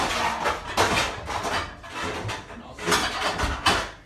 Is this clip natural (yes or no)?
yes